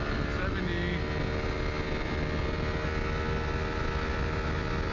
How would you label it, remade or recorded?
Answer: recorded